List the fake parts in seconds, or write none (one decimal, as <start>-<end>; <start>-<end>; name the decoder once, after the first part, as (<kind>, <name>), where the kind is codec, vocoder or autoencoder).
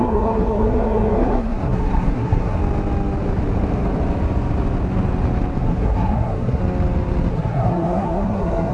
0.0-2.6 (codec, SNAC); 5.6-6.6; 7.3-8.7